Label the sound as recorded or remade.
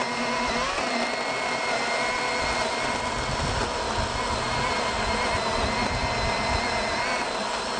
recorded